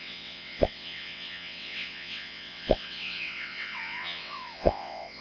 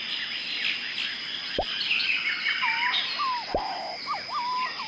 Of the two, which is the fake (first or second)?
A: first